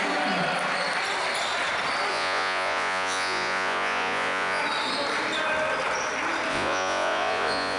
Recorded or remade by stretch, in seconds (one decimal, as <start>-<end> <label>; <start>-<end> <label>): 0.0-2.1 recorded; 2.1-4.6 remade; 4.6-6.5 recorded; 6.5-7.8 remade